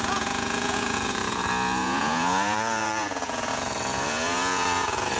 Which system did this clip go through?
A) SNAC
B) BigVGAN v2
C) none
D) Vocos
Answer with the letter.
D